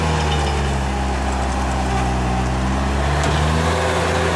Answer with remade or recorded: recorded